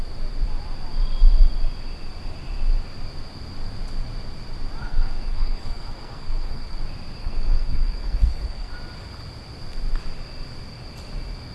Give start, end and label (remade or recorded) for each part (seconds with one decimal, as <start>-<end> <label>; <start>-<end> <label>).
0.0-4.8 recorded; 4.8-6.8 remade; 6.8-7.2 recorded; 7.2-8.7 remade; 8.7-11.5 recorded